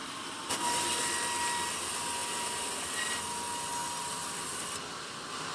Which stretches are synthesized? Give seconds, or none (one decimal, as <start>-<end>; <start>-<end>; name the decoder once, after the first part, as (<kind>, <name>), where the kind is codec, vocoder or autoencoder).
2.2-2.9 (vocoder, BigVGAN v2)